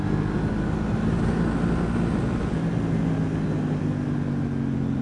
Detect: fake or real real